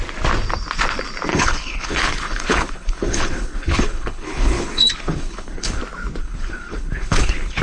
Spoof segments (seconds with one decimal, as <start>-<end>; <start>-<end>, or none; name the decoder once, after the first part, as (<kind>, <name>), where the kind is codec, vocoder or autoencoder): 1.3-5.8 (codec, HILCodec); 6.2-7.6